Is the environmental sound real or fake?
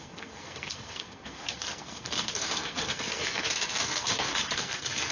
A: fake